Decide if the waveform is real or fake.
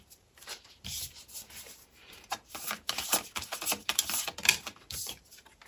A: fake